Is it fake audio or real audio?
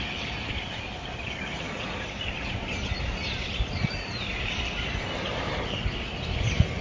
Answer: real